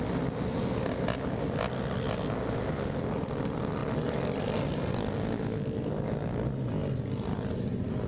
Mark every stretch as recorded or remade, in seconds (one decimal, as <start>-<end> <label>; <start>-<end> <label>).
0.0-8.1 recorded